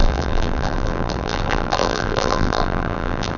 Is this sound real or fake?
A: fake